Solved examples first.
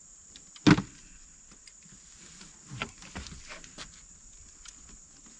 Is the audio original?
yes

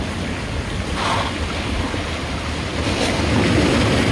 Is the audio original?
yes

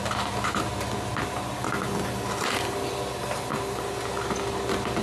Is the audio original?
yes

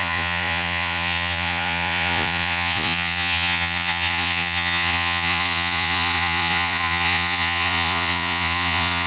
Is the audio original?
no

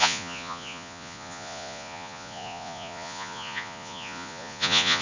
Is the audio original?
no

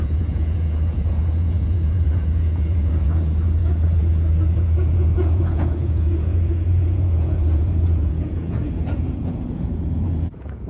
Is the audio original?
no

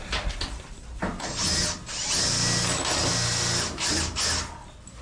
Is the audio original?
yes